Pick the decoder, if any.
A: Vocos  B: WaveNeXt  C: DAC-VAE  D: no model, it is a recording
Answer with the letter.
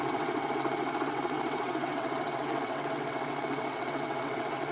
B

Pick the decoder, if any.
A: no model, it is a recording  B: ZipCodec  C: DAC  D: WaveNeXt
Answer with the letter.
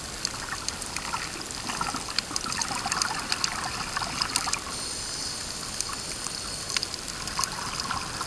A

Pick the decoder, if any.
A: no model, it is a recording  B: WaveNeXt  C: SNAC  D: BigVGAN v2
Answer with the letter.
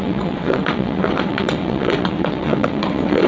B